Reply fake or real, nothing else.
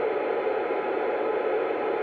real